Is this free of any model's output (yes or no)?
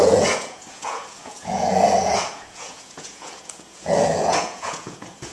no